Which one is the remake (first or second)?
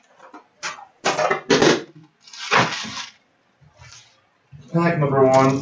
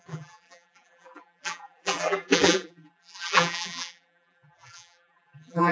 second